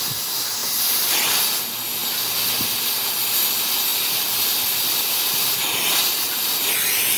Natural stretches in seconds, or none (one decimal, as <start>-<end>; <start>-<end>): 0.0-0.6; 1.4-3.9; 6.1-7.2